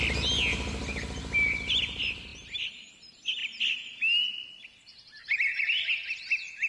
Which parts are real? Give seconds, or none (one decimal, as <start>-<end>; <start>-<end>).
0.0-4.9; 5.6-6.7